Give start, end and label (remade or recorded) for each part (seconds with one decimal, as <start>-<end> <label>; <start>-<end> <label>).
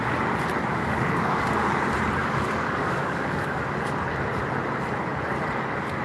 0.0-0.7 recorded; 0.7-1.7 remade; 1.7-2.2 recorded; 2.2-3.6 remade; 3.6-6.0 recorded